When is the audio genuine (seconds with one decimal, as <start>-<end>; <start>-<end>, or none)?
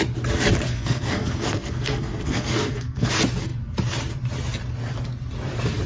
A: 0.0-0.7; 3.1-5.9